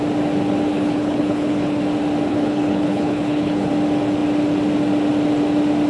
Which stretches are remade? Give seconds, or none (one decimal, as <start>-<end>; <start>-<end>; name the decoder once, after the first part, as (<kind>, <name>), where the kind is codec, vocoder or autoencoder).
0.7-1.8 (codec, HILCodec); 2.3-3.7